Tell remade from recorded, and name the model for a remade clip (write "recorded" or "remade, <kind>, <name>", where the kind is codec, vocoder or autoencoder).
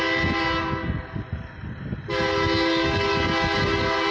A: recorded